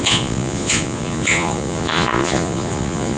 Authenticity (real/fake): fake